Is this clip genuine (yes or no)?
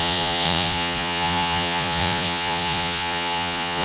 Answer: no